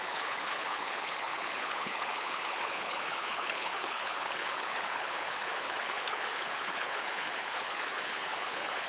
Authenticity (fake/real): fake